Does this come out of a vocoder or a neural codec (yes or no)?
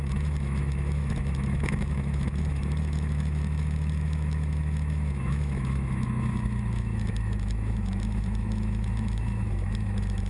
yes